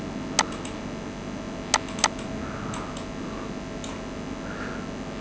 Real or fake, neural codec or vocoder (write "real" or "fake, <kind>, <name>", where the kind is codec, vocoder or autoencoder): real